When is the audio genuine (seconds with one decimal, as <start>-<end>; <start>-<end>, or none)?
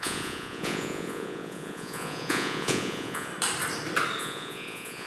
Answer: 3.3-4.2